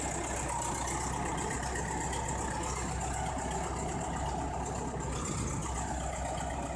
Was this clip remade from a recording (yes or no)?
no